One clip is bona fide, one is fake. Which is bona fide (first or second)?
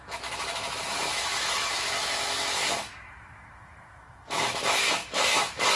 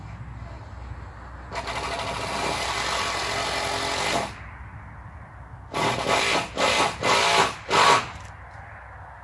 second